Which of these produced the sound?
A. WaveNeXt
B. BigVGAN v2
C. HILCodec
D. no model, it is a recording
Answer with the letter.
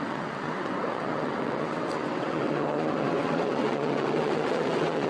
A